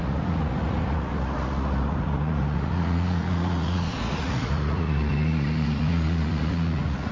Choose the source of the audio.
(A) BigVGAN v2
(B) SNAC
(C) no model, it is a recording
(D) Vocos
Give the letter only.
D